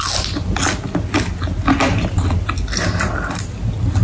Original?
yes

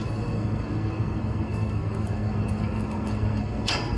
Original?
no